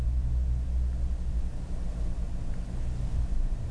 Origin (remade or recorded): recorded